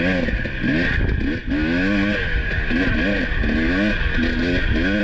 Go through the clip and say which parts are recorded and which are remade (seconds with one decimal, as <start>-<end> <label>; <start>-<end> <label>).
0.0-5.0 recorded